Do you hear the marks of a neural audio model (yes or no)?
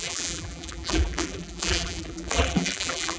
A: yes